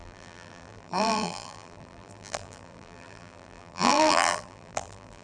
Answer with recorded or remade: remade